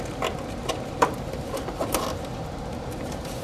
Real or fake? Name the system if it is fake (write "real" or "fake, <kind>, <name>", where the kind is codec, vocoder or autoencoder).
fake, vocoder, BigVGAN v2